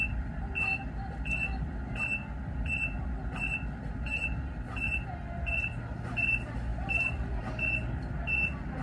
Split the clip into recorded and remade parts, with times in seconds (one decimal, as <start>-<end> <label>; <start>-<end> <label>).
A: 0.0-8.8 recorded